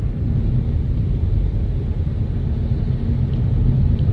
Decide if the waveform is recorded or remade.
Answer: recorded